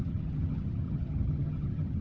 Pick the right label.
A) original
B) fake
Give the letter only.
B